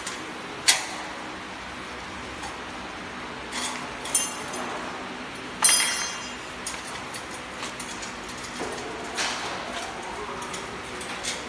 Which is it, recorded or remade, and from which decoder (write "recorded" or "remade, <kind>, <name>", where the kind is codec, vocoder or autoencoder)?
recorded